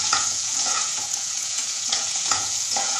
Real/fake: fake